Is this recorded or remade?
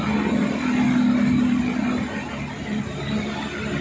recorded